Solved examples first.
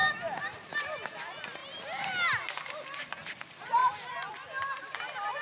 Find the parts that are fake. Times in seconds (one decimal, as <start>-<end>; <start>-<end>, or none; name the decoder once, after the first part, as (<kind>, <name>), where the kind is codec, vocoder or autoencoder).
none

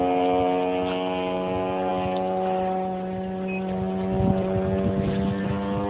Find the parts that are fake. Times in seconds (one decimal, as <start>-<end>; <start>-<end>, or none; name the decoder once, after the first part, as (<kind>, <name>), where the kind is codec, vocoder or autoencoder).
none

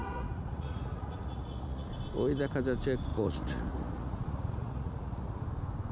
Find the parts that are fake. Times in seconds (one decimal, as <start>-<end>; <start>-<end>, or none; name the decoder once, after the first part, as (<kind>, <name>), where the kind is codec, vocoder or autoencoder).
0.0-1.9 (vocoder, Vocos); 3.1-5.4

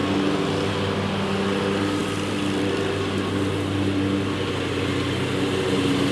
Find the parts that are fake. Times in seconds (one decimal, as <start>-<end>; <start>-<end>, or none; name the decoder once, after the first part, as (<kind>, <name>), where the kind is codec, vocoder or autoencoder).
none

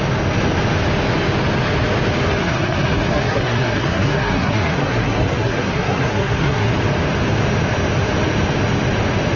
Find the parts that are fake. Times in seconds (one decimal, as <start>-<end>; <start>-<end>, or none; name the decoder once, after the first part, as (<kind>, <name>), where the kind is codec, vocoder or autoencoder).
2.4-6.7 (codec, SNAC)